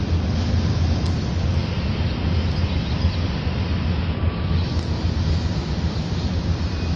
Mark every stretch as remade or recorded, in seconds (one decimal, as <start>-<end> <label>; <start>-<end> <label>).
0.0-7.0 recorded

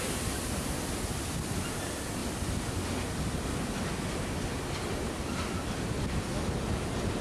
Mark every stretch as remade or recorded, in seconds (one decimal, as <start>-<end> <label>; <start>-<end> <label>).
0.0-7.2 recorded

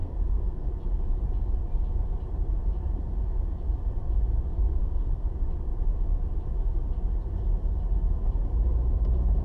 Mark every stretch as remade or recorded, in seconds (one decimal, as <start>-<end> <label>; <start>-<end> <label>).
0.0-0.7 remade; 0.7-4.8 recorded; 4.8-5.3 remade; 5.3-9.4 recorded

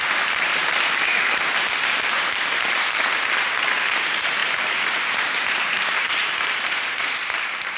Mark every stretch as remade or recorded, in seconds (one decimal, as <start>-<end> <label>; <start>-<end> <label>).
0.0-7.8 remade

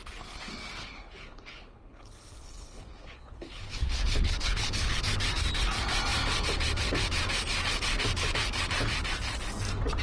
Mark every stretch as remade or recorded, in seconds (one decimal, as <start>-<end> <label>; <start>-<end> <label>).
0.0-0.8 recorded; 0.8-5.0 remade; 5.0-10.0 recorded

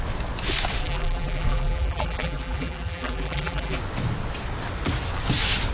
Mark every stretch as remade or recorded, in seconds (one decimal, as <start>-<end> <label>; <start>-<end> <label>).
0.0-0.8 recorded; 0.8-3.8 remade; 3.8-5.7 recorded